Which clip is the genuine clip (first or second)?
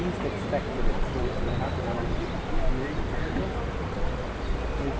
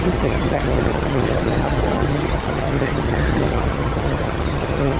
first